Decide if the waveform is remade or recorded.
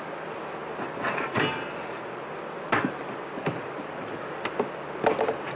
recorded